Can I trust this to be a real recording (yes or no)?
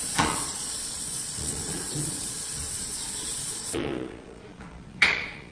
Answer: no